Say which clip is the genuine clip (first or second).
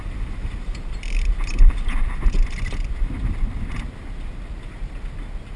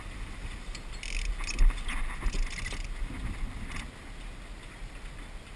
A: second